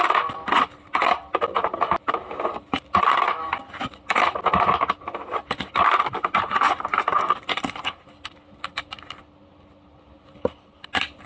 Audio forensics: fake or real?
fake